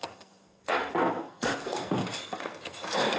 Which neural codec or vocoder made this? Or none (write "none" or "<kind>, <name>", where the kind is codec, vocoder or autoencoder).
codec, SNAC